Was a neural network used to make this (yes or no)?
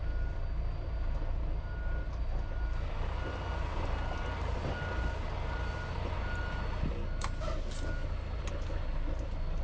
no